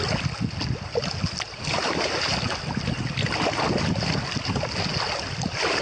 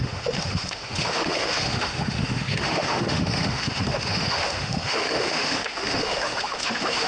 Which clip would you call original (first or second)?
first